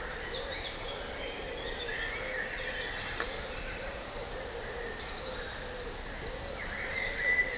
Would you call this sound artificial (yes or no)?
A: no